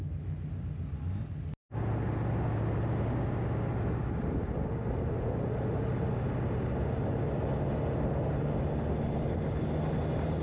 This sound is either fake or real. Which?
real